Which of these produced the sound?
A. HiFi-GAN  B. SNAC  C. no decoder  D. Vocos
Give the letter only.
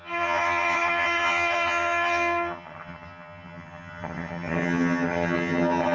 A